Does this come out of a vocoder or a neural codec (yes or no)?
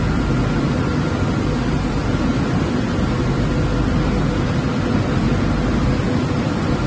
no